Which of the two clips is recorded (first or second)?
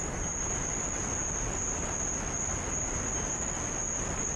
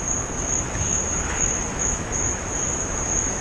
first